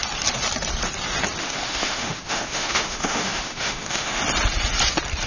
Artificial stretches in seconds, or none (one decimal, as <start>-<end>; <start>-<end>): 1.4-4.2